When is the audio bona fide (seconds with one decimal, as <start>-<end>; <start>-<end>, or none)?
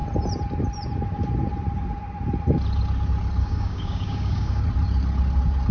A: 0.0-3.4; 4.6-5.7